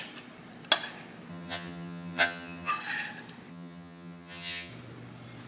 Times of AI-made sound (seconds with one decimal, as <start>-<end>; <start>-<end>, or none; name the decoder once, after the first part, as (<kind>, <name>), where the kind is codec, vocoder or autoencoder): 1.3-2.7 (vocoder, HiFi-GAN); 3.5-4.7